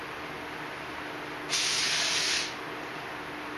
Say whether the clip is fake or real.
real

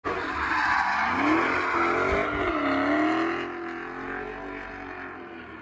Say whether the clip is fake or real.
real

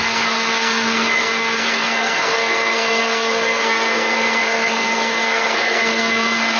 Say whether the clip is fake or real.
fake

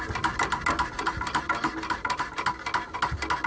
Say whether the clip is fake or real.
real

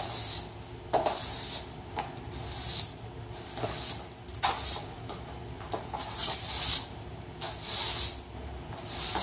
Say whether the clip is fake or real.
real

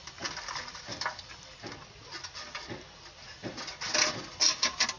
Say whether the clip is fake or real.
real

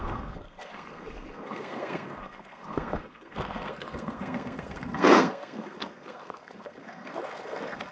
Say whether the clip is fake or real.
fake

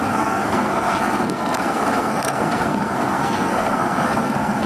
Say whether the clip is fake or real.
fake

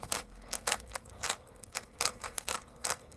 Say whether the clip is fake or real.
fake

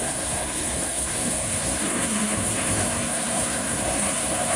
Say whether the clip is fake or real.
fake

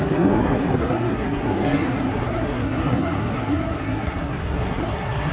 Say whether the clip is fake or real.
fake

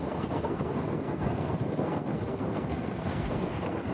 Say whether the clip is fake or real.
fake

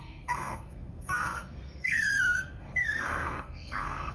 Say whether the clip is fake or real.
fake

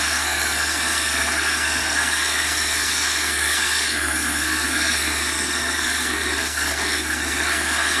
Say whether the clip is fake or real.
fake